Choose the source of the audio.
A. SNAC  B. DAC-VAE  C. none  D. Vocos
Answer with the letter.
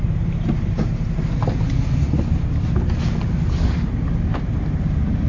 C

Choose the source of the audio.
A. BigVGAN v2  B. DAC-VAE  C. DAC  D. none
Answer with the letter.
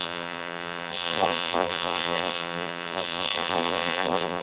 A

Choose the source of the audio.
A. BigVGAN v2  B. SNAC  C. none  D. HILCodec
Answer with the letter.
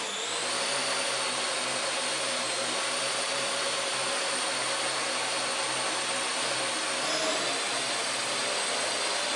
C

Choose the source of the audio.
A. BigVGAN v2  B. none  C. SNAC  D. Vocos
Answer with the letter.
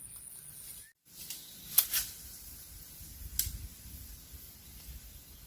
B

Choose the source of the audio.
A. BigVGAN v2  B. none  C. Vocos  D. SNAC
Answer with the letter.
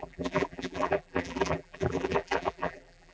A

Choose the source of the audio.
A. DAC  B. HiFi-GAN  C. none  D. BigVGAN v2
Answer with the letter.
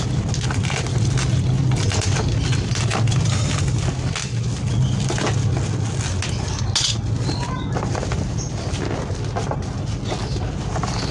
C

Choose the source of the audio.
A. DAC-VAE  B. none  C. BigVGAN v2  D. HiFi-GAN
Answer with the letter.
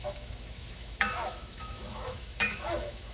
A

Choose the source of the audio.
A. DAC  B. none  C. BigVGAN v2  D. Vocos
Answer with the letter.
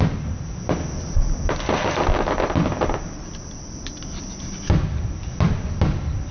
B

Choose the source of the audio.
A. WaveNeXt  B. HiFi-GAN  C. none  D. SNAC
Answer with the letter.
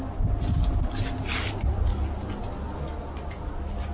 C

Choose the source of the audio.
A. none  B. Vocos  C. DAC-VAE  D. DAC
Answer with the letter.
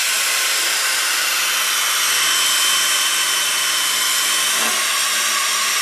A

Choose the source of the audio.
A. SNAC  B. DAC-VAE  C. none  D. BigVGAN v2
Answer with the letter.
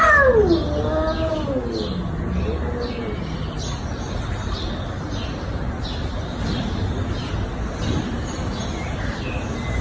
C